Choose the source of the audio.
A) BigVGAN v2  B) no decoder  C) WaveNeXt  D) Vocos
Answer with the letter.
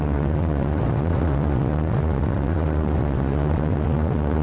C